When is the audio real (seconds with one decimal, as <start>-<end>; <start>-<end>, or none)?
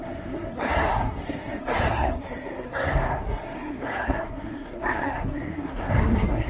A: none